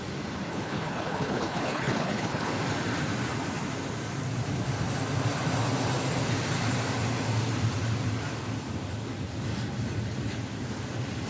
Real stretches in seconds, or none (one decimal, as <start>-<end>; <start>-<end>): 0.0-0.5; 2.5-11.3